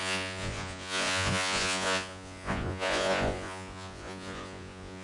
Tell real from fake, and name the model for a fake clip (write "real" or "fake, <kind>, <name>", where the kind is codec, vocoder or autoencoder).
fake, vocoder, Vocos